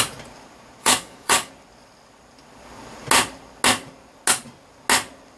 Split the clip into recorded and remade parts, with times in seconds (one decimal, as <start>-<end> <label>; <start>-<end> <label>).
0.0-0.8 recorded; 0.8-1.5 remade; 1.5-5.4 recorded